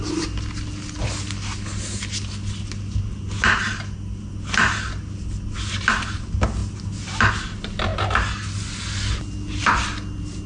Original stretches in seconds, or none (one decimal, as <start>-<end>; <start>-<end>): 0.0-10.5